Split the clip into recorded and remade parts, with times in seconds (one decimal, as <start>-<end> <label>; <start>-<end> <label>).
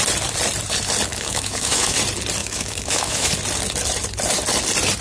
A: 0.0-1.1 recorded; 1.1-2.0 remade; 2.0-2.4 recorded; 2.4-3.3 remade; 3.3-5.0 recorded